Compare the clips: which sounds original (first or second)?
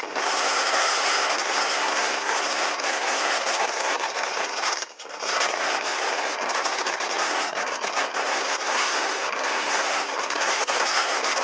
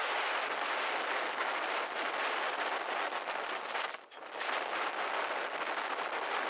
second